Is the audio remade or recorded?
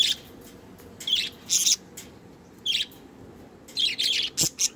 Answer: recorded